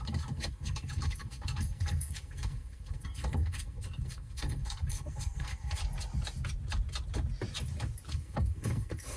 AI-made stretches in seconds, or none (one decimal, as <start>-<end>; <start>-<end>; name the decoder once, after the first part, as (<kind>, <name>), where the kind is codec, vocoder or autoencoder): 0.0-5.8 (codec, SNAC); 8.1-9.2

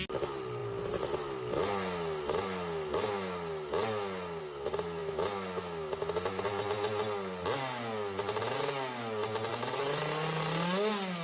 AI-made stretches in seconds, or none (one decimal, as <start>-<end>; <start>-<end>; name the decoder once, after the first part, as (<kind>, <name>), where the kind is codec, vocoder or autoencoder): 9.5-10.0 (vocoder, Vocos)